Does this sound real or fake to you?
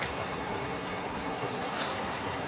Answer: fake